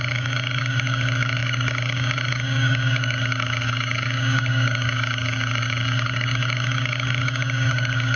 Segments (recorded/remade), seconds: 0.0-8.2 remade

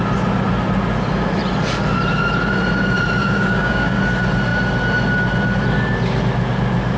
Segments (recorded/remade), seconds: 0.0-3.2 recorded; 3.2-4.0 remade; 4.0-7.0 recorded

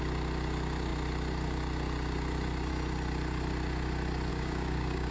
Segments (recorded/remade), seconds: 0.0-4.3 recorded; 4.3-5.1 remade

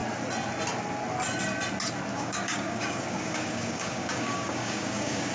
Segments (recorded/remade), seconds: 0.0-2.1 recorded; 2.1-5.3 remade

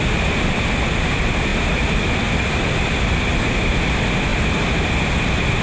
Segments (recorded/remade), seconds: 0.0-5.6 recorded

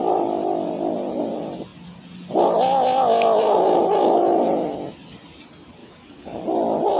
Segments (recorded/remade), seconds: 0.0-5.8 recorded; 5.8-6.4 remade; 6.4-7.0 recorded